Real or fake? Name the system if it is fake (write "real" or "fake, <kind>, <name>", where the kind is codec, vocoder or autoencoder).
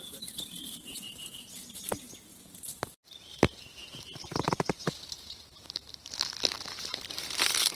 fake, vocoder, BigVGAN v2